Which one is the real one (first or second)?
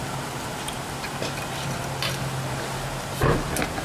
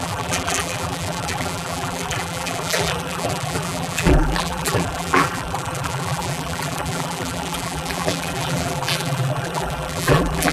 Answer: first